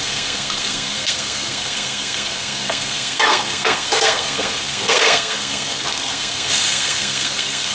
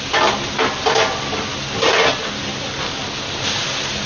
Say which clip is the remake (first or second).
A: first